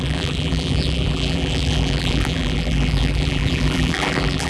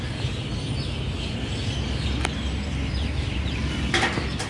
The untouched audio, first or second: second